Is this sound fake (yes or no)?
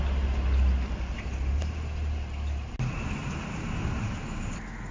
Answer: no